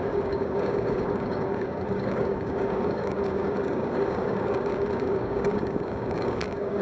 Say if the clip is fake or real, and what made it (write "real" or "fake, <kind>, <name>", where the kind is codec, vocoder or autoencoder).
fake, codec, DAC